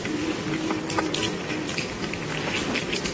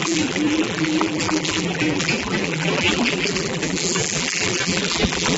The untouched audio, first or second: first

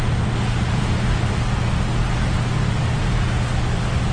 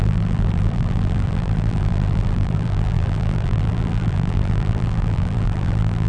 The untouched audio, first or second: first